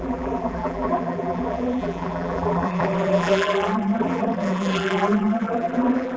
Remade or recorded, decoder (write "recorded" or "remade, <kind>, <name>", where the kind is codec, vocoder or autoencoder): remade, vocoder, BigVGAN v2